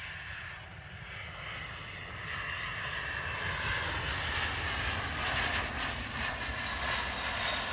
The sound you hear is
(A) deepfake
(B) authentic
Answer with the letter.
B